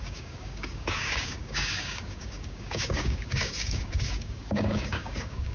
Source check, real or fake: fake